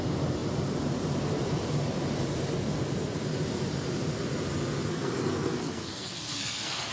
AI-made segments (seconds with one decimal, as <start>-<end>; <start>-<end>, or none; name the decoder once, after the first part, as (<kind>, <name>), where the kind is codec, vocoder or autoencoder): 4.9-6.9 (codec, SNAC)